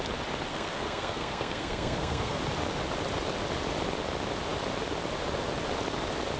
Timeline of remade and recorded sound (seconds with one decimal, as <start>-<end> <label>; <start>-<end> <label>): 0.0-0.5 recorded; 0.5-2.4 remade; 2.4-6.4 recorded